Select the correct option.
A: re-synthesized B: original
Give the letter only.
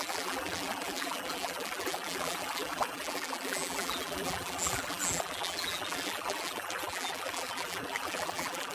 A